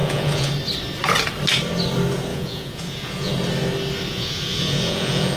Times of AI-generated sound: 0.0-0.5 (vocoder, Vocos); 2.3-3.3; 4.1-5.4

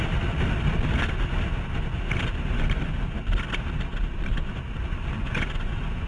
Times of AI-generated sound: 5.2-6.1 (vocoder, Vocos)

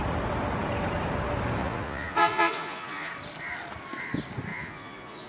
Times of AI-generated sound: 1.6-3.1 (vocoder, Vocos); 4.5-5.3